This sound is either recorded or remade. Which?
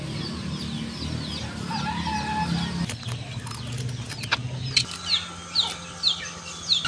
recorded